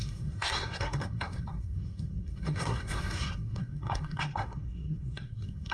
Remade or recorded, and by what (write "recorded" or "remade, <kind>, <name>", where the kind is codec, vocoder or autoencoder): remade, codec, SNAC